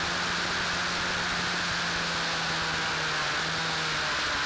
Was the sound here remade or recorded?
recorded